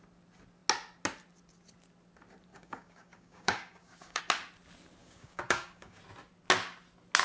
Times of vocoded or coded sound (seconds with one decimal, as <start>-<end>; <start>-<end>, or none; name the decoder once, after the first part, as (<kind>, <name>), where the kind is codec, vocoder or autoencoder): 2.5-4.2 (codec, DAC); 5.0-6.0